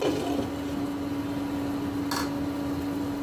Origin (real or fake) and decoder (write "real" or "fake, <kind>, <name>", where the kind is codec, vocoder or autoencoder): real